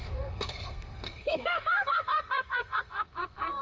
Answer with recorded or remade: remade